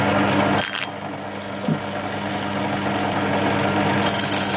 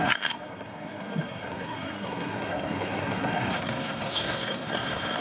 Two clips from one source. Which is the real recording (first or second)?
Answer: first